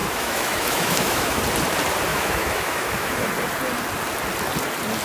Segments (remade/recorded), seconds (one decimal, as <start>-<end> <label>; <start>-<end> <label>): 0.0-1.4 remade; 1.4-2.1 recorded; 2.1-3.3 remade; 3.3-5.0 recorded